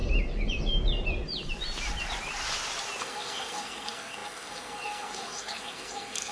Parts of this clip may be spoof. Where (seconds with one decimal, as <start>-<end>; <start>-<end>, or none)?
3.0-6.3